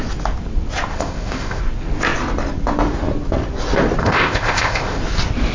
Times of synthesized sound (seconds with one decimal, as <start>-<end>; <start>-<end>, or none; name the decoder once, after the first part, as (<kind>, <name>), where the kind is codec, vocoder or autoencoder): 0.9-1.6 (codec, ZipCodec); 4.0-5.0